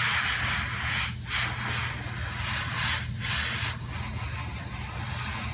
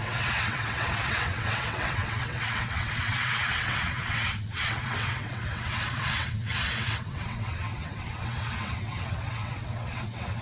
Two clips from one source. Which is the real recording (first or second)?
first